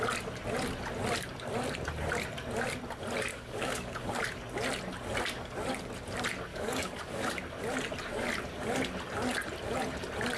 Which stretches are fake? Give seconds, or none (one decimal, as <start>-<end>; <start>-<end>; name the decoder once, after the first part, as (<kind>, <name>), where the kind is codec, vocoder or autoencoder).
3.3-4.2 (codec, DAC); 6.5-7.3